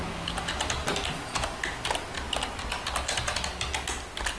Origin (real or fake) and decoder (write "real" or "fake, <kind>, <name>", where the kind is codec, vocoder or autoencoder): real